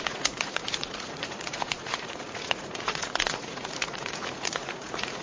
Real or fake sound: fake